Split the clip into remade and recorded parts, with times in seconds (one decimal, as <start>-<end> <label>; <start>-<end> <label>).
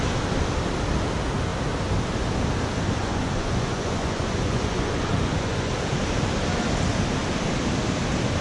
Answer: 0.0-3.0 recorded; 3.0-5.7 remade; 5.7-8.4 recorded